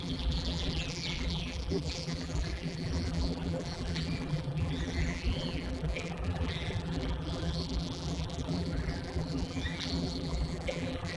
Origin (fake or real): fake